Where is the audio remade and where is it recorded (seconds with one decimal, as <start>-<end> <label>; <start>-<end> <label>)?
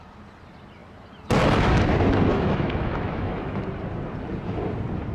0.0-2.3 recorded; 2.3-3.6 remade; 3.6-5.1 recorded